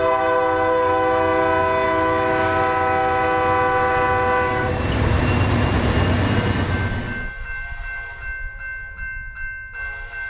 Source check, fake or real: real